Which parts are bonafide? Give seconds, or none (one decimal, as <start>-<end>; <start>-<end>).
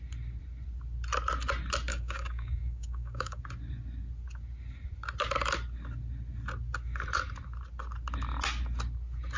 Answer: 0.0-1.9; 3.4-9.4